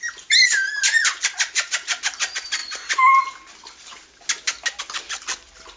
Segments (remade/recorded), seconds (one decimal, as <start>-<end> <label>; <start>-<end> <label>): 0.0-5.8 recorded

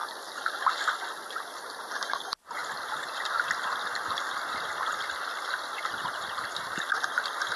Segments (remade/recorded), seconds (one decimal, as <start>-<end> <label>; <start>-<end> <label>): 0.0-0.8 remade; 0.8-2.6 recorded; 2.6-6.2 remade; 6.2-7.6 recorded

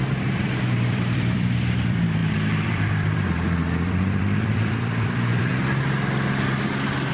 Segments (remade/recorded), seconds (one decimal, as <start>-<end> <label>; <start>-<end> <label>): 0.0-5.5 remade; 5.5-6.6 recorded; 6.6-7.1 remade

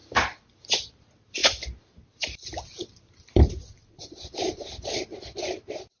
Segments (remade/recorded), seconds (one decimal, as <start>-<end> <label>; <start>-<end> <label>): 0.0-0.9 remade; 0.9-1.4 recorded; 1.4-5.0 remade; 5.0-6.0 recorded